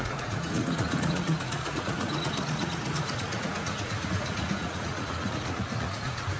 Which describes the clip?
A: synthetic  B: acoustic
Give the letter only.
A